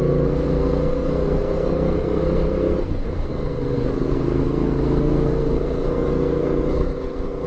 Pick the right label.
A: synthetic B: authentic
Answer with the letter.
A